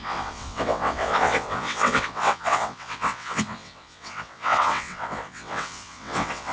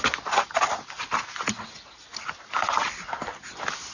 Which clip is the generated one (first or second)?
first